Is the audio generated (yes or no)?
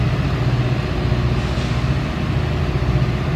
no